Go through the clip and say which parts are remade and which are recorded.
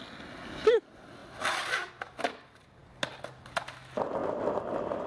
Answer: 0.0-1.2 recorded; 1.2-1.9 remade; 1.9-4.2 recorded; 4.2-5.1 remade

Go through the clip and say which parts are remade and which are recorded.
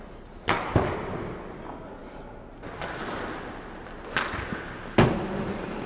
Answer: 0.0-5.9 recorded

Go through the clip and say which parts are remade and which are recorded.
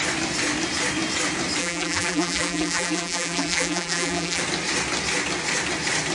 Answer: 0.0-1.6 recorded; 1.6-4.4 remade; 4.4-6.1 recorded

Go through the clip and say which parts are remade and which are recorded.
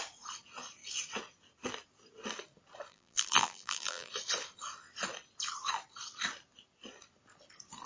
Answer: 0.0-2.9 recorded; 2.9-4.1 remade; 4.1-7.9 recorded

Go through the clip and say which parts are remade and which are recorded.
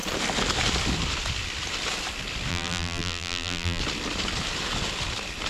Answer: 0.0-2.5 recorded; 2.5-3.8 remade; 3.8-5.5 recorded